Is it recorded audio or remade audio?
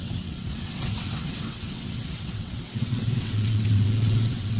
remade